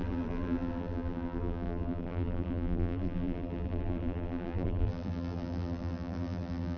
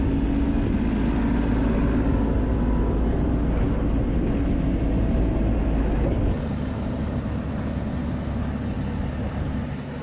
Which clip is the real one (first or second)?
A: second